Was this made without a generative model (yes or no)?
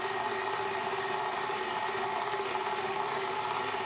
yes